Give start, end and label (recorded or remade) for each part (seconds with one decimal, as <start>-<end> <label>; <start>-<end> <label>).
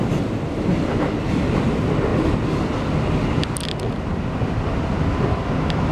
0.0-5.9 recorded